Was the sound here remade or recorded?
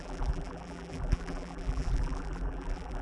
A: remade